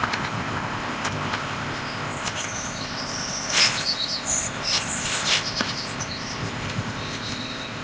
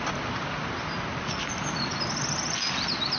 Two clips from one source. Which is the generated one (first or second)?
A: first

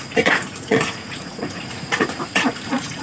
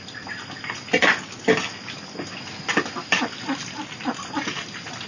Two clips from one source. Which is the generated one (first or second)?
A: first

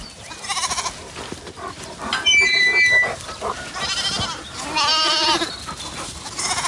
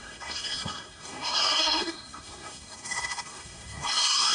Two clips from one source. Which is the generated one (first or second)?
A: second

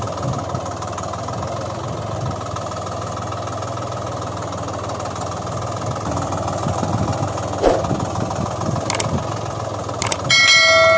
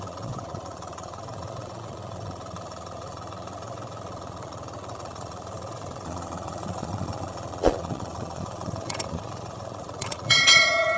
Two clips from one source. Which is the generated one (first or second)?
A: second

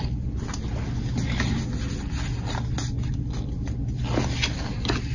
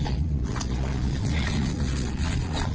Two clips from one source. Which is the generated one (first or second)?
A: second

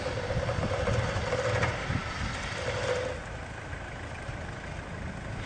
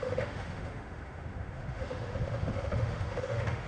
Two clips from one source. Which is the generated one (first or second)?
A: second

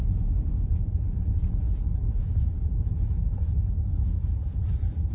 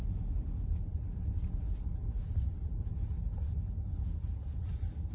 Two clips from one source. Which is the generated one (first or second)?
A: first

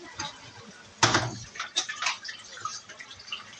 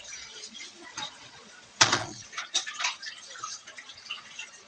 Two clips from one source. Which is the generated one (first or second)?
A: second